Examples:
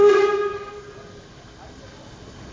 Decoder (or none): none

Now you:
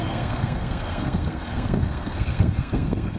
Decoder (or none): codec, SNAC